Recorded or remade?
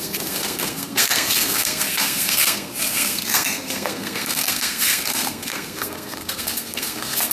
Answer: remade